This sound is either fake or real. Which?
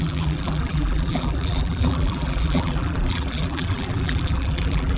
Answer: fake